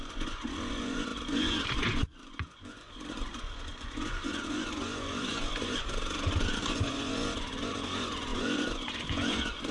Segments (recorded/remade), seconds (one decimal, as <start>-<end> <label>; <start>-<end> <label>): 0.0-9.7 remade